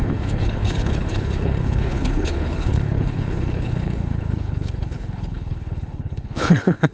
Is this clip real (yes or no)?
no